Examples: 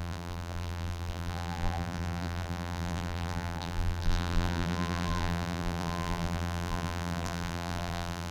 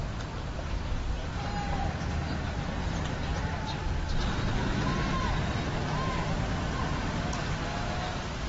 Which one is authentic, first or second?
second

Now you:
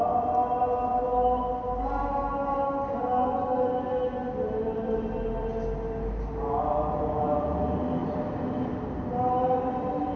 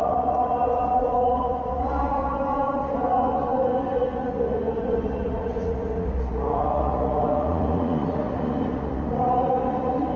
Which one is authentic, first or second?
first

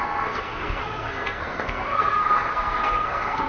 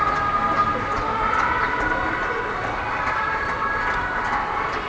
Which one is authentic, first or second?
second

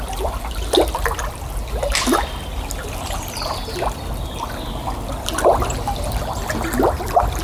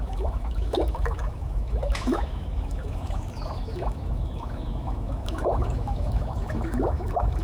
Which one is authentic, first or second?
first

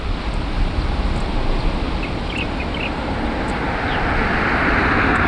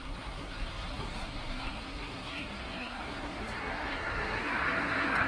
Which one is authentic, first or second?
first